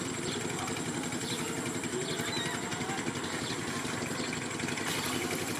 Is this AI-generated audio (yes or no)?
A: no